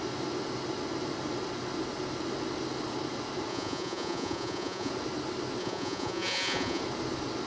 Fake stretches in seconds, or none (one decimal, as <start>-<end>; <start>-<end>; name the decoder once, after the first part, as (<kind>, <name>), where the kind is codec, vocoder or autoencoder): 3.5-4.9 (vocoder, Vocos); 5.6-6.8